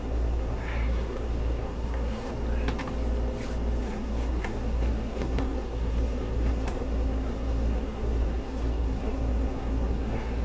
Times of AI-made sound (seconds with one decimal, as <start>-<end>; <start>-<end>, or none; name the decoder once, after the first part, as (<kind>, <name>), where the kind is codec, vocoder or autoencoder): 0.0-2.3 (codec, SNAC); 3.8-10.4